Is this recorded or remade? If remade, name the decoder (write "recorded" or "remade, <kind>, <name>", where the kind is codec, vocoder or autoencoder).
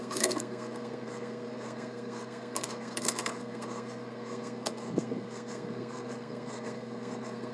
remade, codec, SNAC